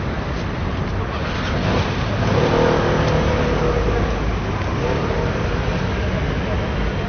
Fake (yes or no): no